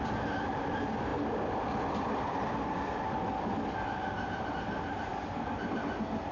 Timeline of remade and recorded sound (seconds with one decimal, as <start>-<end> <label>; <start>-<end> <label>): 0.0-6.3 recorded